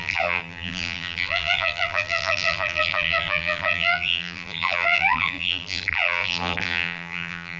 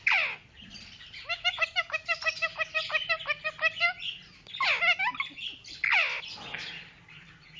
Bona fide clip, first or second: second